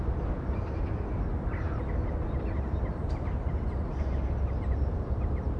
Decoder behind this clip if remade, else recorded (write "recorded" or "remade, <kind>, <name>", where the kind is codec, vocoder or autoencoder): recorded